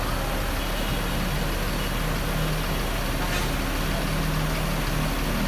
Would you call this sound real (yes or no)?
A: yes